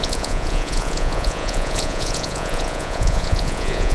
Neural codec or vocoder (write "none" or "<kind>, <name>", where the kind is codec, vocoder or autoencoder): vocoder, Vocos